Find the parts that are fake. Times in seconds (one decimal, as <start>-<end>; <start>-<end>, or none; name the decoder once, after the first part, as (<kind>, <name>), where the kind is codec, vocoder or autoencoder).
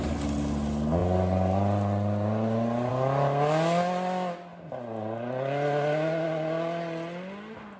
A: none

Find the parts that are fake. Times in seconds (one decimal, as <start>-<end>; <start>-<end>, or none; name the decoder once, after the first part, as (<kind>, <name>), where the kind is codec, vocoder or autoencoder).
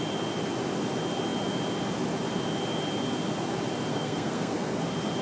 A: 3.9-4.8 (codec, SNAC)